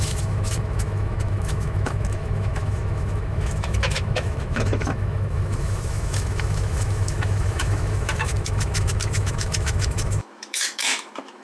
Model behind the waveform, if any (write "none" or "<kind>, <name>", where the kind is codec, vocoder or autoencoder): autoencoder, DAC-VAE